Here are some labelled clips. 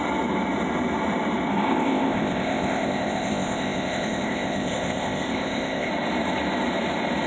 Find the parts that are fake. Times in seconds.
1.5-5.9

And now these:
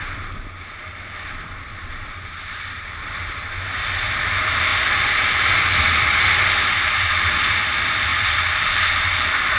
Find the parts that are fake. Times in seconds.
8.1-9.6

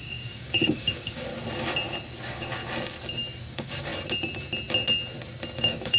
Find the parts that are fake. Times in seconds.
0.0-1.3; 2.2-2.6; 3.4-3.9; 5.6-6.0

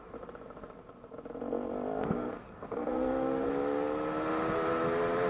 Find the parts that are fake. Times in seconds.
2.0-3.5

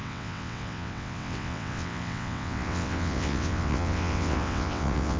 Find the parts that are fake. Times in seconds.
0.0-5.2

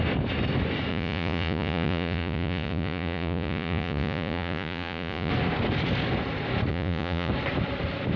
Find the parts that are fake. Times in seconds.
0.9-5.3; 6.7-7.3